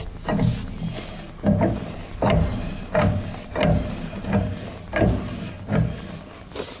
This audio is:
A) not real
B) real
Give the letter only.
B